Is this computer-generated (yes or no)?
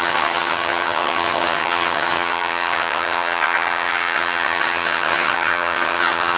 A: yes